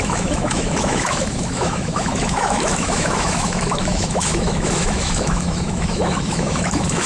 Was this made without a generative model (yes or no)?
no